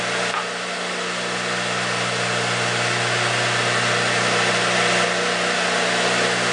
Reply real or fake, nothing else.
real